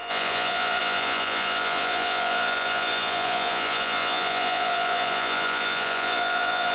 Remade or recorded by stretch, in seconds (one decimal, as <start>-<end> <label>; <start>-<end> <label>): 0.0-6.7 remade